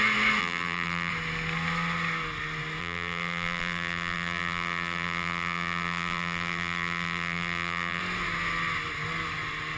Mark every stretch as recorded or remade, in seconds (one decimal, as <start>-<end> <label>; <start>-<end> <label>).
0.0-0.4 recorded; 0.4-1.1 remade; 1.1-2.8 recorded; 2.8-8.0 remade; 8.0-9.8 recorded